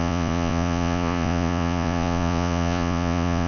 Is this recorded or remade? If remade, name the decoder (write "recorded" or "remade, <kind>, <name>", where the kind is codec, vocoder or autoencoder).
remade, vocoder, Vocos